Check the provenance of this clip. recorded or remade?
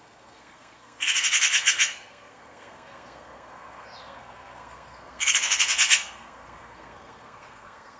remade